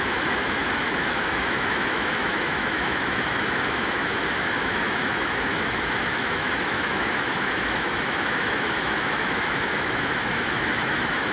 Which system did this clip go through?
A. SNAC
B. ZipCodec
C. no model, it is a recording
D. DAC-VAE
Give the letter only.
D